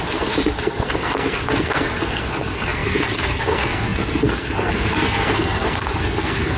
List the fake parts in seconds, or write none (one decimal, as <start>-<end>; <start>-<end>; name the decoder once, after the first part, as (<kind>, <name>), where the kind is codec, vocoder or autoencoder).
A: 0.0-6.6 (codec, SNAC)